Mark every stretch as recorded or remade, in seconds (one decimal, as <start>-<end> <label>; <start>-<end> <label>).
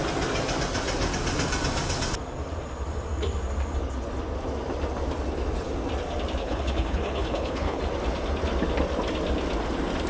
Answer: 0.0-6.4 recorded; 6.4-7.8 remade; 7.8-10.1 recorded